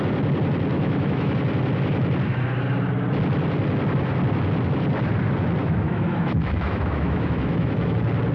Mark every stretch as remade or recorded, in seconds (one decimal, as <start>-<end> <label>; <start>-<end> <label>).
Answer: 0.0-0.7 recorded; 0.7-1.3 remade; 1.3-5.6 recorded; 5.6-7.9 remade; 7.9-8.3 recorded